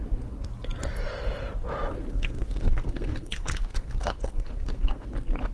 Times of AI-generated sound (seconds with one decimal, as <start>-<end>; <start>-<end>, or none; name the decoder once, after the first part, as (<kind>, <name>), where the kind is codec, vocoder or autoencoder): 2.1-5.1 (codec, SNAC)